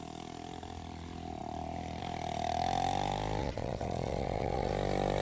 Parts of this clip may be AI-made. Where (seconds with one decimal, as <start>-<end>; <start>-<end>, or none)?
3.4-4.7